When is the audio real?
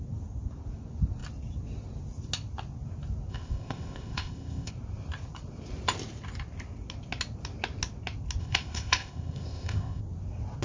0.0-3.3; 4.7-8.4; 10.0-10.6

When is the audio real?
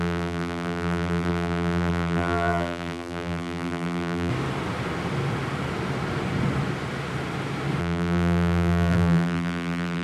4.3-7.8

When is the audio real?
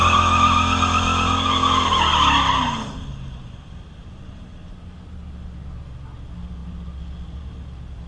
0.0-8.1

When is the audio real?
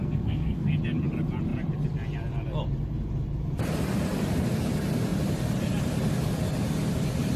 0.7-7.4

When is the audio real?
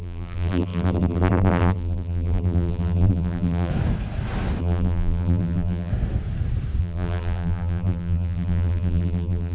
3.7-4.6; 5.9-6.8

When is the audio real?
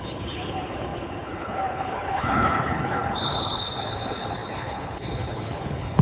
none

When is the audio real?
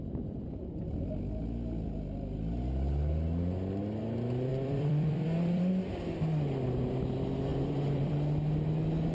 0.0-4.5; 5.7-7.5; 8.1-9.1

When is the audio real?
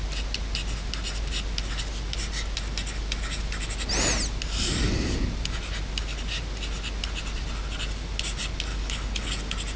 0.0-8.7; 9.3-9.8